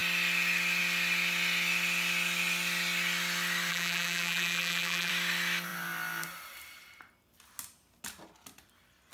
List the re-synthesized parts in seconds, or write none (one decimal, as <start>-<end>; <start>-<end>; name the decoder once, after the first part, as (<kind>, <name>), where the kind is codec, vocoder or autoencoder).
3.7-5.1 (vocoder, BigVGAN v2)